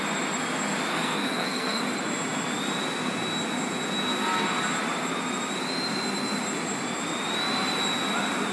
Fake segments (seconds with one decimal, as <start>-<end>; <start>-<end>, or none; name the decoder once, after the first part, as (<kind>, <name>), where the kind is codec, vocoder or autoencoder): 0.9-1.8 (codec, SNAC)